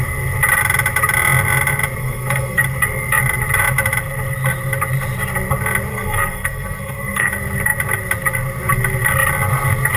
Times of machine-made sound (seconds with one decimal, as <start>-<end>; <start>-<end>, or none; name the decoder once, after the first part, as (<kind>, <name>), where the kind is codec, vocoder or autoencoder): 2.0-2.6 (codec, SNAC); 5.9-7.3